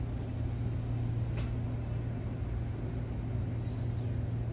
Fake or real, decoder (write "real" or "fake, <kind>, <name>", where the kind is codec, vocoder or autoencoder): real